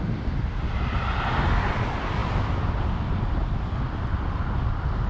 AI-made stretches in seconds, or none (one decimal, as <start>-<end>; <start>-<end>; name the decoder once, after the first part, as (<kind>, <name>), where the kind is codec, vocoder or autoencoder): none

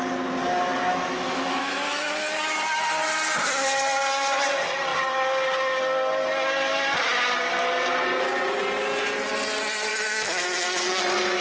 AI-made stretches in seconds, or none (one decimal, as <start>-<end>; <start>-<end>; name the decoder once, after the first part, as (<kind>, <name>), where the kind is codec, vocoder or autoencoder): 0.9-2.6 (autoencoder, DAC-VAE); 9.9-11.0

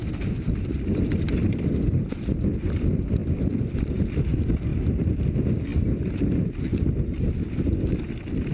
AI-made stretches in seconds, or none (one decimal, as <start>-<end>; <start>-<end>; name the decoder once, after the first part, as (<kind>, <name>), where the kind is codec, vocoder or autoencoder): 0.0-0.6 (vocoder, BigVGAN v2); 5.7-6.8